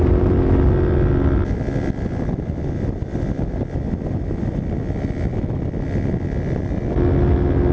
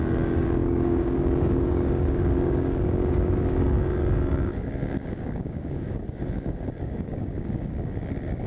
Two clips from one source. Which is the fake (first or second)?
second